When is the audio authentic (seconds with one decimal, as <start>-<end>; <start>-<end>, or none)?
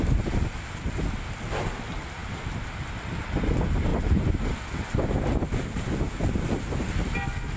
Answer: 0.0-7.6